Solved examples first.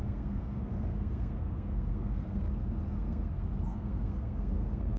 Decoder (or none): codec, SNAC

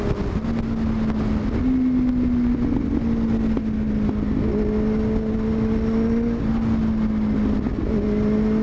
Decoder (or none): none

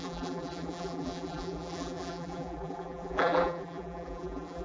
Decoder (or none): vocoder, BigVGAN v2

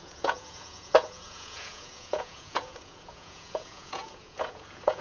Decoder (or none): vocoder, Vocos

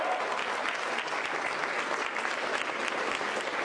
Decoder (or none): none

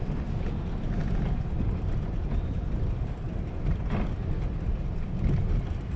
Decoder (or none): none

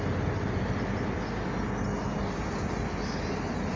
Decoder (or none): none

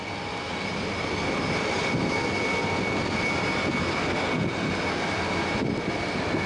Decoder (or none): none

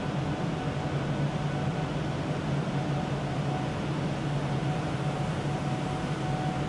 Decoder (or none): none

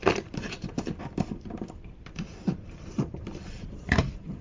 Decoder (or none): vocoder, BigVGAN v2